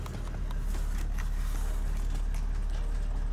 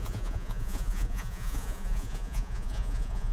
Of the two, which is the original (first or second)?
first